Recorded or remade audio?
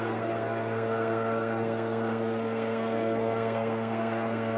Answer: remade